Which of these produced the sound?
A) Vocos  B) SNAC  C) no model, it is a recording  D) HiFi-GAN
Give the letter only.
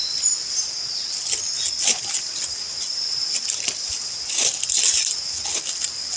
C